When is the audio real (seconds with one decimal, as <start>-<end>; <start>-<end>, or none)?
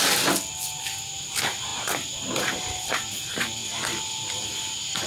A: 0.0-5.1